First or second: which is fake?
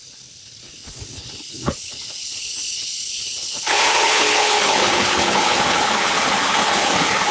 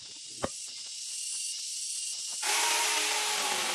first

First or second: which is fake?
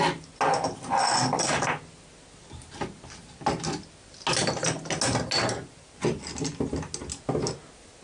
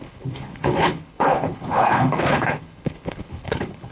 second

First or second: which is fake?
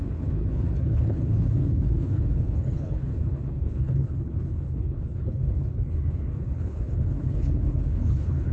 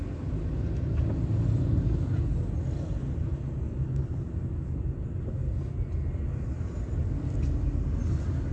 first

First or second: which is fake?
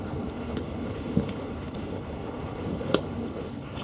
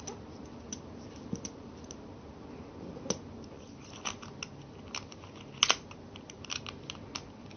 first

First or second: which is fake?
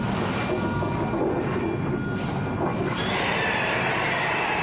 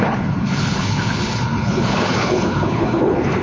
second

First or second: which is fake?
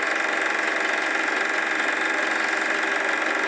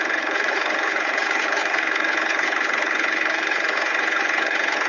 second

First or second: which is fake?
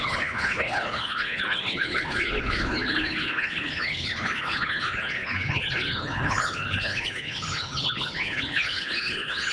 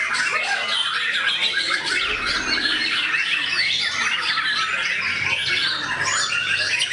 first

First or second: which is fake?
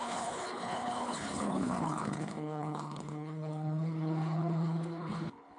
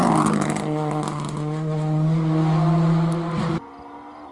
first